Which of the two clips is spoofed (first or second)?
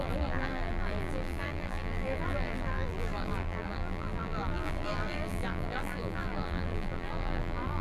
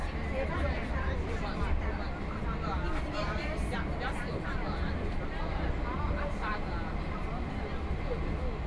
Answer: first